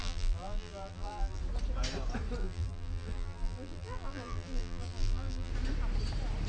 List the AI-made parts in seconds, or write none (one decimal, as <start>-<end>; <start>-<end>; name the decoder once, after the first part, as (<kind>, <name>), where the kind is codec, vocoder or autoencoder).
0.0-1.4 (vocoder, BigVGAN v2); 2.4-5.5